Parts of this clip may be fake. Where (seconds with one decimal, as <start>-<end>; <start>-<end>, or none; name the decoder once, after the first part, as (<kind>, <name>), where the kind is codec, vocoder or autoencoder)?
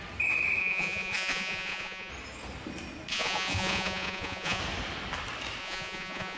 0.6-2.1 (vocoder, Vocos); 3.1-4.6; 5.6-6.4